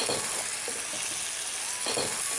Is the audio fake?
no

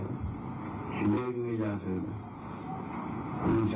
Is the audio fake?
no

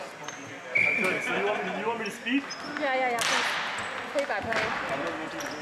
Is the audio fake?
no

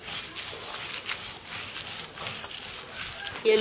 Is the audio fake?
no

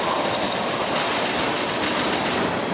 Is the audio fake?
no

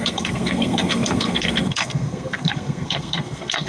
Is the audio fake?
yes